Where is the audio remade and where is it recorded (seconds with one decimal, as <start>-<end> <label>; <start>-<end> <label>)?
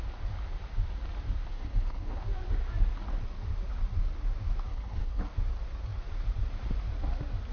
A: 0.0-1.5 recorded; 1.5-2.2 remade; 2.2-4.7 recorded; 4.7-5.2 remade; 5.2-7.5 recorded